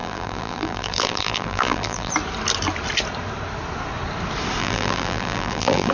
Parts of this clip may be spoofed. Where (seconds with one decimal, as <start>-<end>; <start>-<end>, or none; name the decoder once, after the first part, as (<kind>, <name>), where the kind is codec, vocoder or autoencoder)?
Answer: 0.0-2.1 (vocoder, BigVGAN v2); 4.6-5.9